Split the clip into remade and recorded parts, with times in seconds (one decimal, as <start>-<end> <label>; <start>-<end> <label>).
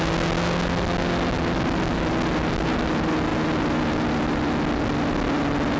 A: 0.0-5.8 recorded